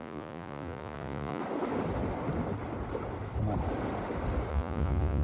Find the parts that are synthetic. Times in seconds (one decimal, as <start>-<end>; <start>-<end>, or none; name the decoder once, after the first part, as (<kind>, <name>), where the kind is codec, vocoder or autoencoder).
0.0-1.4 (vocoder, Vocos); 4.5-5.2